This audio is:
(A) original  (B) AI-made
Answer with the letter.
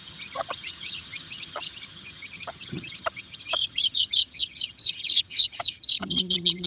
B